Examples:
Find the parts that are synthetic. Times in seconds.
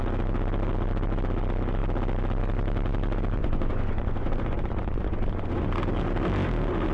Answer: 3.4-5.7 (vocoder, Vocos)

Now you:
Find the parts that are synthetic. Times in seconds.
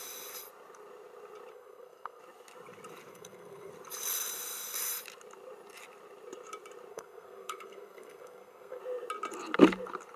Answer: 1.5-2.2 (codec, SNAC); 3.1-3.7; 6.9-8.8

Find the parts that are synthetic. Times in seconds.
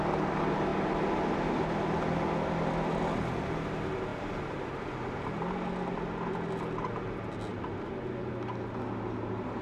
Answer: none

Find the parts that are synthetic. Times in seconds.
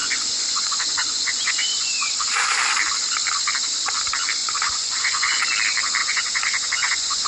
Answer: 0.0-2.1 (vocoder, Vocos); 4.4-5.4; 6.0-7.3